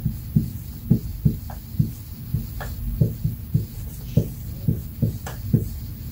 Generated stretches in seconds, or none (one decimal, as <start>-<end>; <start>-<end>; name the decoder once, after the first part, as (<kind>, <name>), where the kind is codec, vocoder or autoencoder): 0.0-1.1 (vocoder, Vocos); 1.7-2.3; 3.0-6.1